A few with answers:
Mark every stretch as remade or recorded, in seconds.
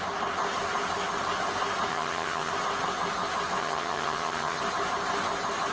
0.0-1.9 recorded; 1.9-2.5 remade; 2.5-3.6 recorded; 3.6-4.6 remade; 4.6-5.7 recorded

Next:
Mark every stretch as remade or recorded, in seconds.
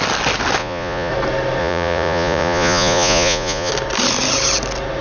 0.0-0.6 recorded; 0.6-1.1 remade; 1.1-1.6 recorded; 1.6-3.7 remade; 3.7-5.0 recorded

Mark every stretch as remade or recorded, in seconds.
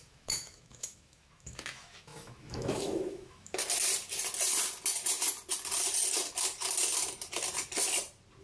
0.0-3.6 remade; 3.6-8.4 recorded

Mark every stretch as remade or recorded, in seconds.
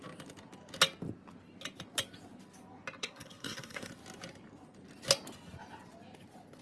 0.0-3.0 recorded; 3.0-3.9 remade; 3.9-6.6 recorded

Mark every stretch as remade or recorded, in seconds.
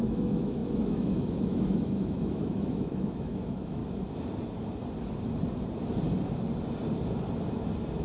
0.0-3.8 remade; 3.8-8.0 recorded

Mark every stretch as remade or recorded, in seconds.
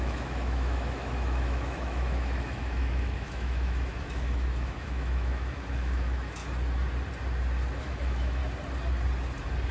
0.0-6.4 remade; 6.4-7.8 recorded; 7.8-8.4 remade; 8.4-9.7 recorded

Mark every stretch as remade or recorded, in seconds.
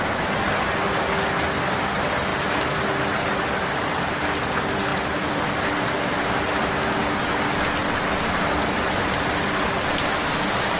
0.0-4.9 recorded; 4.9-5.4 remade; 5.4-10.8 recorded